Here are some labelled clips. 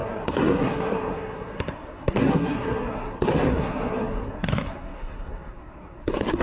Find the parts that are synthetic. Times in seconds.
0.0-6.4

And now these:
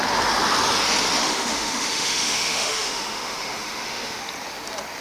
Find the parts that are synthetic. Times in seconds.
1.2-4.2

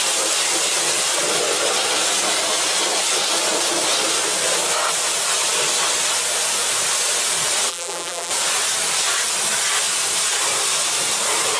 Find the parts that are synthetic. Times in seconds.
7.7-8.3

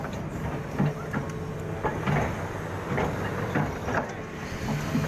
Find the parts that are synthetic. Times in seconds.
none

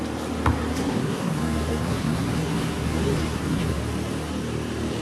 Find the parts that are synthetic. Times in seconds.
0.8-3.8

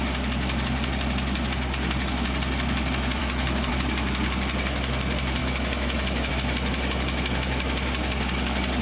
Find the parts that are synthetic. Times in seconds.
3.2-3.7; 5.4-6.3

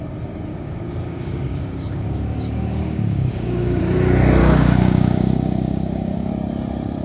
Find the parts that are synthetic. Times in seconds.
0.5-3.8; 4.4-6.3